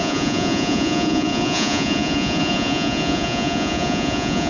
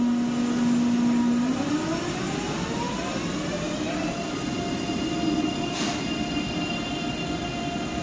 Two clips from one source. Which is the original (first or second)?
second